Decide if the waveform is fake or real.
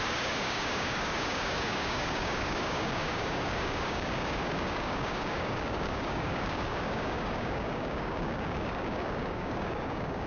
fake